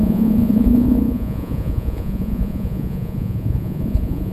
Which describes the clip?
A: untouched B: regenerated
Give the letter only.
B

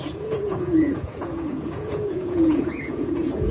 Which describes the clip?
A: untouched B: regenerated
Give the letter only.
B